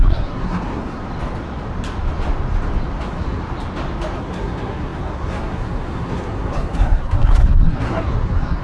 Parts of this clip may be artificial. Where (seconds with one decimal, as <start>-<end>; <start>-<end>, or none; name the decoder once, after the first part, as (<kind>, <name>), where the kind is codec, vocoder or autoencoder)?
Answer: 0.0-1.0 (codec, SNAC); 3.0-3.4; 4.2-8.6